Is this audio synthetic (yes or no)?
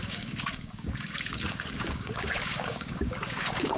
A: yes